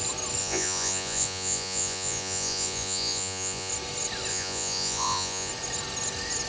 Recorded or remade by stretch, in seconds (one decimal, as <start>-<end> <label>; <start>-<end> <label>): 0.0-0.4 recorded; 0.4-3.7 remade; 3.7-4.3 recorded; 4.3-5.5 remade; 5.5-6.5 recorded